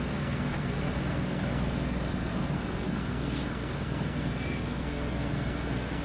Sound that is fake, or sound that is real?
fake